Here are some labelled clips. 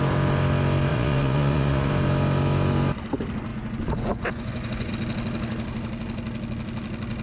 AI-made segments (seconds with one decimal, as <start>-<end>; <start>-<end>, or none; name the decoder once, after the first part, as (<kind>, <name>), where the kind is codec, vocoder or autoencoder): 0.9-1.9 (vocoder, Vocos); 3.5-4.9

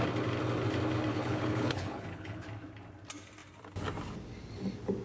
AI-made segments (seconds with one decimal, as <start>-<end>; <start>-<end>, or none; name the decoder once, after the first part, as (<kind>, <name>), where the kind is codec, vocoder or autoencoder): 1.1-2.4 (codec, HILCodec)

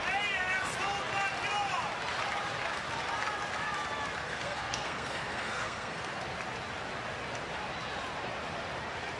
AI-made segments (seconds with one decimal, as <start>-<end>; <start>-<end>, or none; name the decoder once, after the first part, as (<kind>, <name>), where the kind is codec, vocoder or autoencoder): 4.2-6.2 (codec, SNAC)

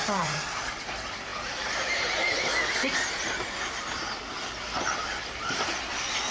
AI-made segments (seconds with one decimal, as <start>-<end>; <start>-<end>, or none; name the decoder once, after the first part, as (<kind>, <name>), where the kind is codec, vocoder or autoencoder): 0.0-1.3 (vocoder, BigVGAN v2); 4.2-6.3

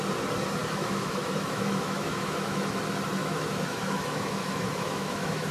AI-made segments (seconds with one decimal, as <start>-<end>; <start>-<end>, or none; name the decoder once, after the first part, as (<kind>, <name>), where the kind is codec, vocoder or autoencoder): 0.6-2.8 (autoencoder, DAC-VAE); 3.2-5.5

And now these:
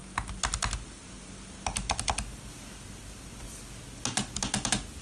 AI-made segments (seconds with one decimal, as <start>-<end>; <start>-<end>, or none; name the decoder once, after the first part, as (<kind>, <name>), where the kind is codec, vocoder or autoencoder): none

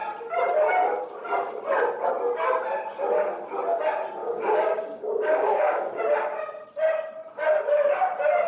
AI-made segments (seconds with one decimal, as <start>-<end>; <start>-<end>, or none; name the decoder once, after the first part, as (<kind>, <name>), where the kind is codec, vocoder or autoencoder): 4.2-6.0 (codec, DAC)